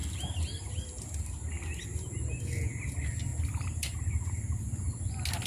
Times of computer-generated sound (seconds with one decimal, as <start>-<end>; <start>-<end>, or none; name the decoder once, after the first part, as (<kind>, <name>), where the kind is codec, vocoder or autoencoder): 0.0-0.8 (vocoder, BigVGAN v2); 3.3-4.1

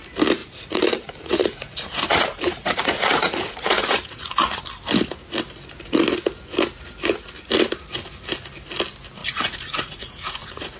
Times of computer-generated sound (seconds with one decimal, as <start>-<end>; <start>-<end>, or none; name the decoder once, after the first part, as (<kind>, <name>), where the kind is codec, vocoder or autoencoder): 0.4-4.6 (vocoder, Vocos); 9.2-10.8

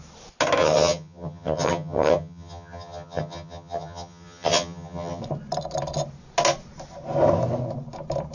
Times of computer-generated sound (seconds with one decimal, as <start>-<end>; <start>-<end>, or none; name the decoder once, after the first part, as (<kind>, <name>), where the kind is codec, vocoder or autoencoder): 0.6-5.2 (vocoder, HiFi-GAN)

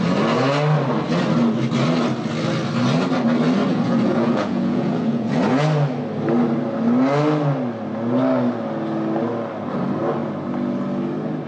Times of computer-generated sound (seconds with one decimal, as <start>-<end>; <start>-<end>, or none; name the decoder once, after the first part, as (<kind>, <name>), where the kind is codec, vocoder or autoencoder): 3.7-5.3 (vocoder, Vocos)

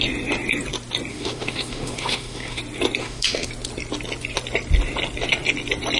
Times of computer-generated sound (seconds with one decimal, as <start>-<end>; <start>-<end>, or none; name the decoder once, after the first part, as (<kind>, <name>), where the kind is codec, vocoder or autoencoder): 1.1-2.6 (autoencoder, DAC-VAE); 3.0-3.5